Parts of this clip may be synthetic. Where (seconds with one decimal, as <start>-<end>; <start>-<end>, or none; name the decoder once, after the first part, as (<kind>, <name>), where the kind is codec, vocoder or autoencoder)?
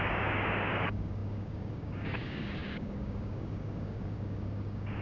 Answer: 0.0-5.0 (codec, DAC)